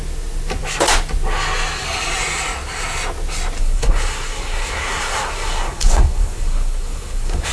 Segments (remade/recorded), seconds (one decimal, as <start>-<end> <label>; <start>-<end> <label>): 0.0-3.6 recorded; 3.6-7.5 remade